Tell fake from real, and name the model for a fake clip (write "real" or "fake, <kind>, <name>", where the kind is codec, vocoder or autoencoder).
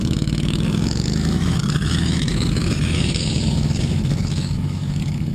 fake, autoencoder, DAC-VAE